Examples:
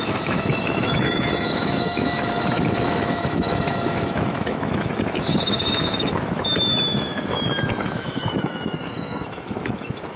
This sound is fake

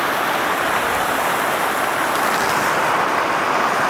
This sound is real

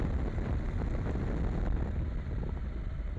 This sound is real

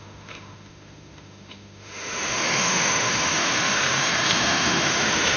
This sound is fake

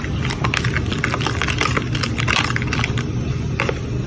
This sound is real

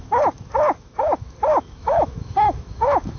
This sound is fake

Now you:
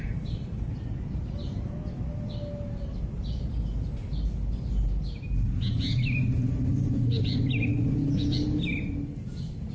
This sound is real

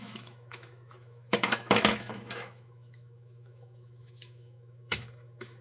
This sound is fake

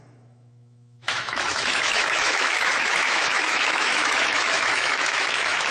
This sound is fake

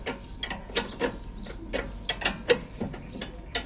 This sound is real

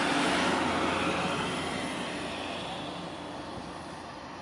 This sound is real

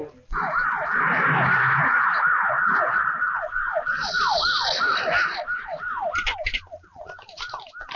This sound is real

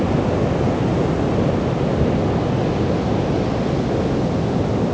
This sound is real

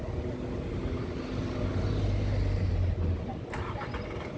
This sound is real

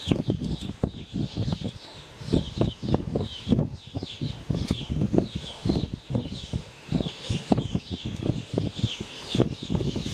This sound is fake